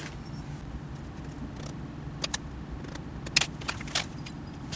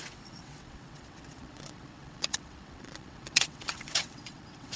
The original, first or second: first